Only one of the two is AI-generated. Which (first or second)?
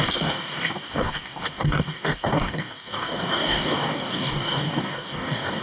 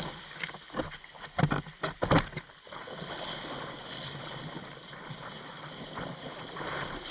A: first